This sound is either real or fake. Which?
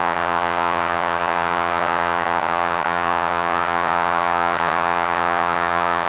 fake